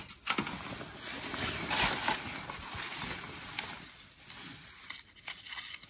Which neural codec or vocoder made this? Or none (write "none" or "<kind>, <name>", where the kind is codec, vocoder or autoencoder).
none